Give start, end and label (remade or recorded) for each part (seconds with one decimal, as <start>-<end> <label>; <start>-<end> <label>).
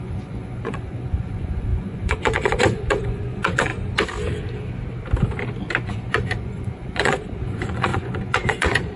0.0-3.7 remade; 3.7-5.9 recorded; 5.9-9.0 remade